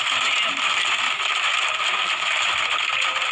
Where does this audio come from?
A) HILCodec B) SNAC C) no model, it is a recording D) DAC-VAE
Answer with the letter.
C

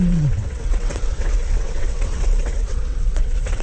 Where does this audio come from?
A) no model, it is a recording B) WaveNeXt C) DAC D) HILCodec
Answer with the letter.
B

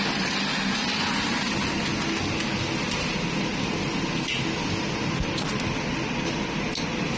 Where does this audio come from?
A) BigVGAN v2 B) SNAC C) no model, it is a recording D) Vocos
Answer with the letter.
C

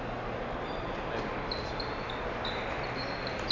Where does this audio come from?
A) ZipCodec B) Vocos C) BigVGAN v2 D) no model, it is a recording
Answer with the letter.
D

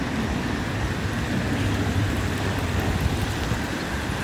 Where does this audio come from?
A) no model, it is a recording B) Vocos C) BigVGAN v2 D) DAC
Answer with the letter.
A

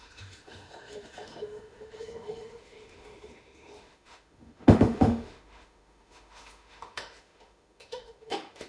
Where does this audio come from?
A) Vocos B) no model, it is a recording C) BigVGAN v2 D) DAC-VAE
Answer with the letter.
D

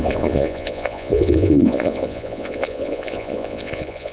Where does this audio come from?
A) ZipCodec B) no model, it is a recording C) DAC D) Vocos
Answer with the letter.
D